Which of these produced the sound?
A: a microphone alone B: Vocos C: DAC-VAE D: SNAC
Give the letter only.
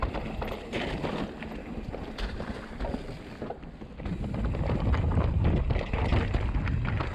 A